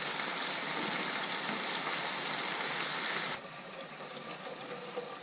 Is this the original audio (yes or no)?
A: yes